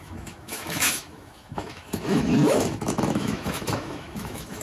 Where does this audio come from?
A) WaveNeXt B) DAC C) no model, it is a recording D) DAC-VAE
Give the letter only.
D